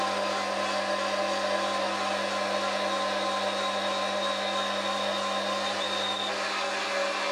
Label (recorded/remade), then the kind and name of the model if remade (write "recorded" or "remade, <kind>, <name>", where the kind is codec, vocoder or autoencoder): recorded